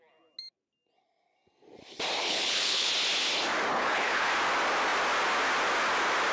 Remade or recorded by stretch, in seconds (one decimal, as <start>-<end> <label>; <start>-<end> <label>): 0.0-2.2 recorded; 2.2-2.9 remade; 2.9-3.7 recorded; 3.7-4.3 remade; 4.3-6.3 recorded